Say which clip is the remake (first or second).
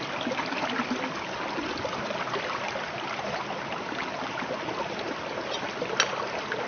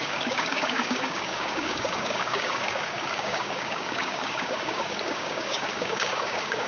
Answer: second